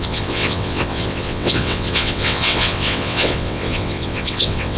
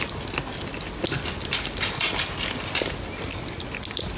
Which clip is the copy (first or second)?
first